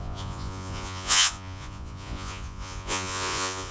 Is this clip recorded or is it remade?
remade